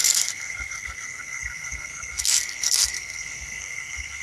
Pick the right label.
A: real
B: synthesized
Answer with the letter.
B